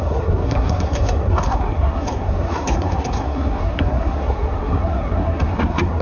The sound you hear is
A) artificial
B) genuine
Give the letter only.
A